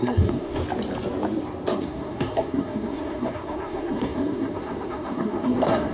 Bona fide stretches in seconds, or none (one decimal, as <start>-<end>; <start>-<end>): 0.6-1.8